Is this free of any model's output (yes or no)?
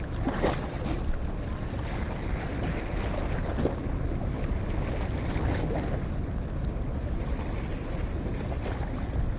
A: yes